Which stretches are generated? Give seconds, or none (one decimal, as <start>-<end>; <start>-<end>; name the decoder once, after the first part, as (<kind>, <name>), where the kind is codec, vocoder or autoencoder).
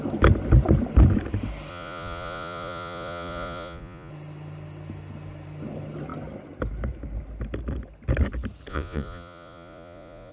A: 1.7-4.1 (vocoder, Vocos); 8.7-10.3